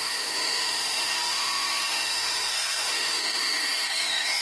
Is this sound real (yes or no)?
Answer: no